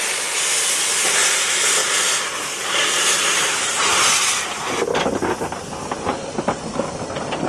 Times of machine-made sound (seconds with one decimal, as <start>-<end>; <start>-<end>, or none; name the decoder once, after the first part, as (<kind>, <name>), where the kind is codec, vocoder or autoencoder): 1.8-5.9 (vocoder, BigVGAN v2)